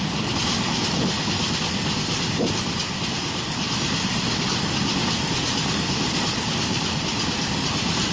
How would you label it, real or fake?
real